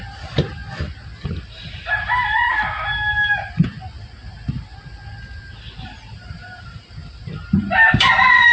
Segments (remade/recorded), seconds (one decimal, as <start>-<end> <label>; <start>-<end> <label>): 0.0-0.6 remade; 0.6-1.5 recorded; 1.5-2.5 remade; 2.5-6.1 recorded; 6.1-7.0 remade; 7.0-7.6 recorded; 7.6-8.5 remade